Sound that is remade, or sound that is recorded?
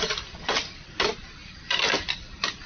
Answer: remade